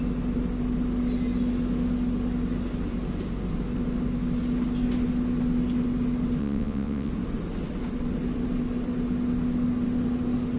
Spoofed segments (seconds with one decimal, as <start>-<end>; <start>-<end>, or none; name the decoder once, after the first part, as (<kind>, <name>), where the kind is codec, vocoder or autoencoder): 6.4-7.1 (vocoder, WaveNeXt)

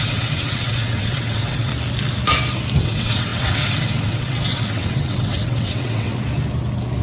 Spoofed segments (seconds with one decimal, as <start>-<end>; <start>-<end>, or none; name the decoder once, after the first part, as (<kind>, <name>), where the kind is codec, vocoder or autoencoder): 0.0-1.7 (vocoder, WaveNeXt); 2.8-6.1

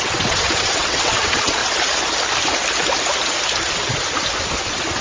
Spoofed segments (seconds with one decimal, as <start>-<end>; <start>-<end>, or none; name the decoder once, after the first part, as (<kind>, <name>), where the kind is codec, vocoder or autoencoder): 0.0-1.6 (vocoder, WaveNeXt); 4.6-5.0